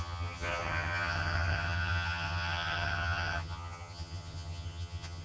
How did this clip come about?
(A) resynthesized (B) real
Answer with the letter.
A